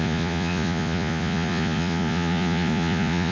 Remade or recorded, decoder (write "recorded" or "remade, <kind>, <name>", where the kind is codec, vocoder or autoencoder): remade, vocoder, Vocos